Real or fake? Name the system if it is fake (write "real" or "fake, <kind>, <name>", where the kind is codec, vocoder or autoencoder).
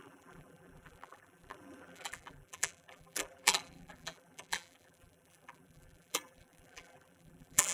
fake, vocoder, BigVGAN v2